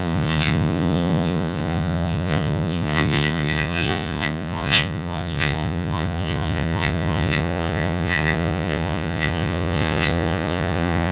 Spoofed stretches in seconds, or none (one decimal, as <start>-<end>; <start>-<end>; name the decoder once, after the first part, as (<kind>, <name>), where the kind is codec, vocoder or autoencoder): 0.0-11.1 (vocoder, Vocos)